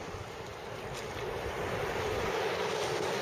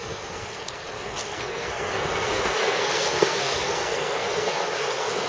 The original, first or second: first